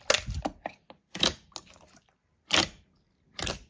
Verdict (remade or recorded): recorded